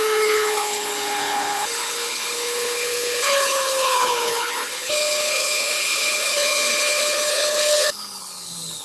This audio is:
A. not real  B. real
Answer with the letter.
A